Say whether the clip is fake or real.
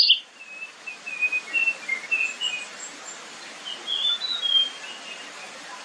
real